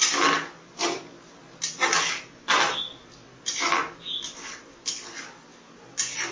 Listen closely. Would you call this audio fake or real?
real